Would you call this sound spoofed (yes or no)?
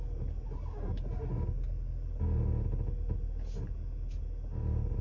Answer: no